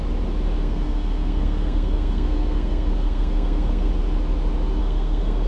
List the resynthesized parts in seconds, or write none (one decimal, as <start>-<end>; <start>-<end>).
0.6-3.9; 4.8-5.5